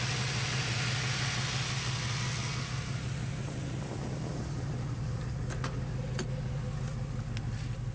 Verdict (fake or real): real